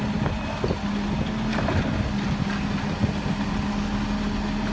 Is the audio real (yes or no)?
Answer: yes